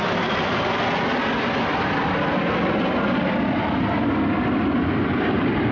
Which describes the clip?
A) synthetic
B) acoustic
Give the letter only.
B